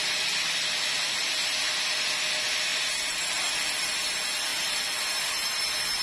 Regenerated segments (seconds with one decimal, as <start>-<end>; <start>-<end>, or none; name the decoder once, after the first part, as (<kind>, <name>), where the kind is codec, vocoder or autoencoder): none

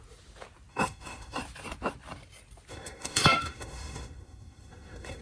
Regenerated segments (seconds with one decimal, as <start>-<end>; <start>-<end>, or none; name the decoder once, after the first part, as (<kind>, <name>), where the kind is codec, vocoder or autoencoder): 0.7-1.4 (autoencoder, DAC-VAE); 2.7-5.2

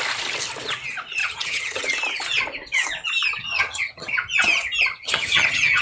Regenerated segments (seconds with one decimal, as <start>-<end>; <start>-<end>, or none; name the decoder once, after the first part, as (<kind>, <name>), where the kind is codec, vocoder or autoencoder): 1.2-1.8 (vocoder, HiFi-GAN); 3.4-4.1; 4.9-5.8

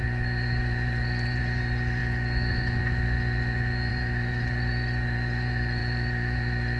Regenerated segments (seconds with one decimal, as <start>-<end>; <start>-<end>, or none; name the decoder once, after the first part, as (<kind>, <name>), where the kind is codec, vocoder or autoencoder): 0.0-2.0 (vocoder, BigVGAN v2); 3.9-6.8